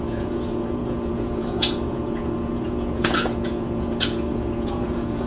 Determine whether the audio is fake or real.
fake